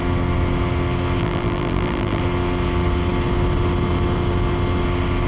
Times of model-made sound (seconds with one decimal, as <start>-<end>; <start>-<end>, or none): 1.2-2.2